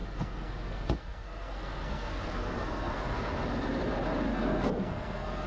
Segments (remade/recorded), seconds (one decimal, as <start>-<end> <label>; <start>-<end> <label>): 0.0-3.3 remade; 3.3-4.3 recorded; 4.3-5.5 remade